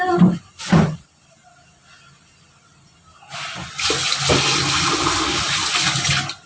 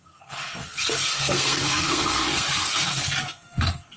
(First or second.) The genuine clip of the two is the first